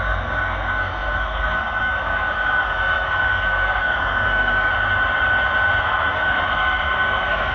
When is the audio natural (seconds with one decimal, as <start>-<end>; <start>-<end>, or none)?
4.7-5.8